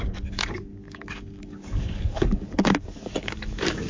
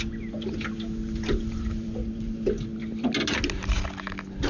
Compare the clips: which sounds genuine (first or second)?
second